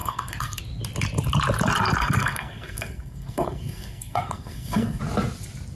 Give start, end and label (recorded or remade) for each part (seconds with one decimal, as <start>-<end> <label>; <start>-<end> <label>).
0.0-0.6 remade; 0.6-2.0 recorded; 2.0-5.0 remade; 5.0-5.8 recorded